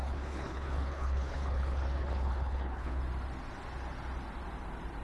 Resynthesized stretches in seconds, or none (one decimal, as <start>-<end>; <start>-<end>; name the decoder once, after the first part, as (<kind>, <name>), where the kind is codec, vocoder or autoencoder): 0.0-3.0 (codec, HILCodec)